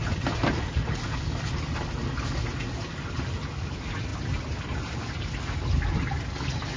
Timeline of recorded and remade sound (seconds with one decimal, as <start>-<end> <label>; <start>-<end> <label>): 0.0-6.8 recorded